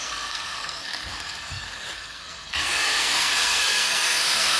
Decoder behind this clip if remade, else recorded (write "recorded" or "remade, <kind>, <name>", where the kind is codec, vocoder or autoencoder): remade, codec, SNAC